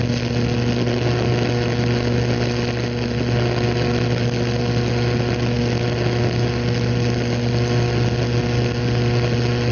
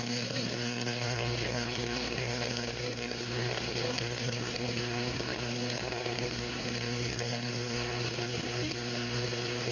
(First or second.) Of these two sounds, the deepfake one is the second